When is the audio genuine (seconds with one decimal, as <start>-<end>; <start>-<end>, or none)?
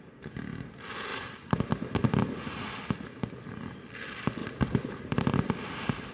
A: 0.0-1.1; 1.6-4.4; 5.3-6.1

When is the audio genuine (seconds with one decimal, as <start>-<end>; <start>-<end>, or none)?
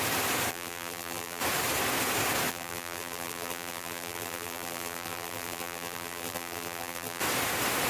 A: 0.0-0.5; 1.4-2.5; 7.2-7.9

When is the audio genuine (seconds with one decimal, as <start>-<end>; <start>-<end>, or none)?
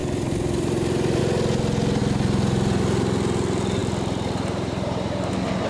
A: 1.2-3.8; 5.3-5.7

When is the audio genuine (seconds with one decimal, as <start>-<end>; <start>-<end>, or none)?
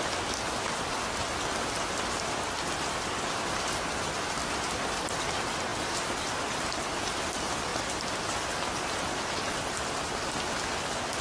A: 0.0-11.2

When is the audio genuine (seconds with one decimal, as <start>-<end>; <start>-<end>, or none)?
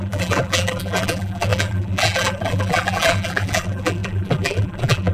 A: none